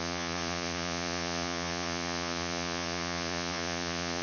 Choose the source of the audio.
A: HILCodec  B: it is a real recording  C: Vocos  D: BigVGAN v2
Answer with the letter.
C